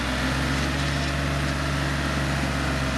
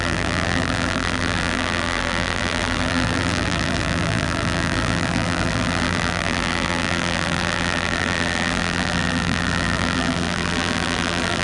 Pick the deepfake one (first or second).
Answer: second